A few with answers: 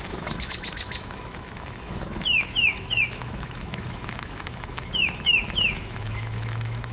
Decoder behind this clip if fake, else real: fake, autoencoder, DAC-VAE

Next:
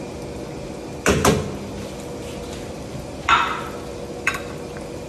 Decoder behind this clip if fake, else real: real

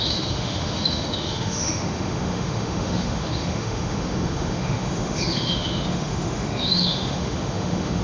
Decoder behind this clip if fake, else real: fake, autoencoder, DAC-VAE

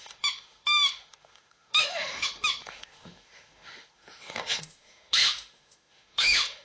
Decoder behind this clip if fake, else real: fake, autoencoder, DAC-VAE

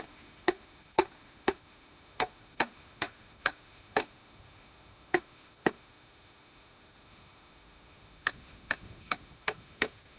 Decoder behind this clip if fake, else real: fake, autoencoder, DAC-VAE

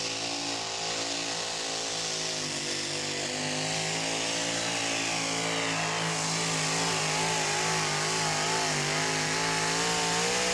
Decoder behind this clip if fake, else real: real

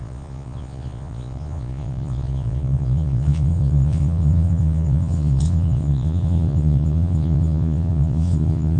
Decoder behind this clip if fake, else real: fake, vocoder, Vocos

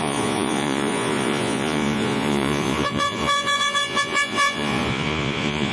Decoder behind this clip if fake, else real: fake, vocoder, Vocos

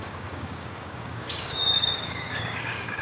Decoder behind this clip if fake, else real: fake, codec, DAC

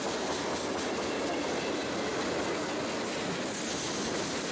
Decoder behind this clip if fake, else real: real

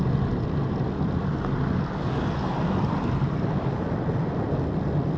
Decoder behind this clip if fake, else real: real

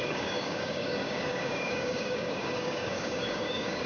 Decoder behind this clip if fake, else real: fake, codec, DAC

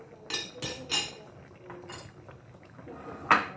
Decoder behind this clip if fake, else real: real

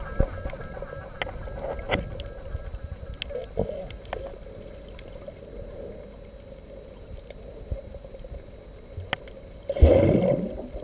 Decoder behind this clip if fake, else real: real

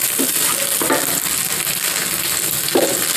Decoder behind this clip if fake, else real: real